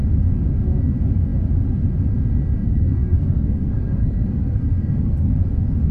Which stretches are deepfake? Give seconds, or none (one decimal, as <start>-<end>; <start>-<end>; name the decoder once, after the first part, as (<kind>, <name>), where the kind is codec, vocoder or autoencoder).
2.6-5.3 (codec, SNAC)

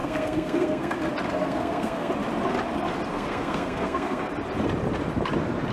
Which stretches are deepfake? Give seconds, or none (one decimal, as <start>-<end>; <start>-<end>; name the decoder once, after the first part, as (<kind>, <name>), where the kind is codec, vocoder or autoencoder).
0.0-1.0 (codec, SNAC); 1.4-2.1; 3.1-4.3

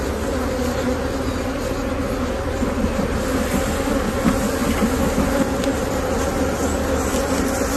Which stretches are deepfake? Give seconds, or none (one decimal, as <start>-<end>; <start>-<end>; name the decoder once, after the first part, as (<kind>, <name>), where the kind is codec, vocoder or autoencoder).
none